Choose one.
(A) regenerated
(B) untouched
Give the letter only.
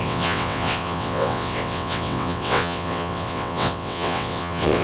A